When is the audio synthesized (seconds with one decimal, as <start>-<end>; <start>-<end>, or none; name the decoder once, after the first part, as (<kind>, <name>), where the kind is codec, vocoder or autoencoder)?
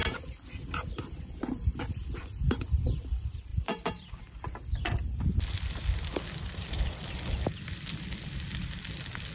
1.8-9.3 (vocoder, BigVGAN v2)